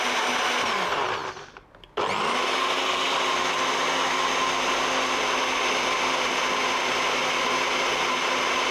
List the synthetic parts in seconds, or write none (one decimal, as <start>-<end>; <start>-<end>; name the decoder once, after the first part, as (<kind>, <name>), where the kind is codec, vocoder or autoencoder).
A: none